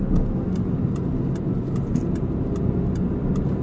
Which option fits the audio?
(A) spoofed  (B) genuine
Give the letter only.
B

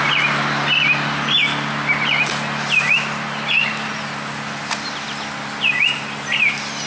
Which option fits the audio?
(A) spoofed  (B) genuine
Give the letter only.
B